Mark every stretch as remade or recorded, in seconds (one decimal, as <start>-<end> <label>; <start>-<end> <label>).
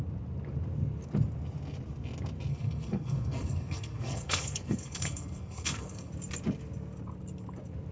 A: 0.0-2.5 recorded; 2.5-6.1 remade; 6.1-7.9 recorded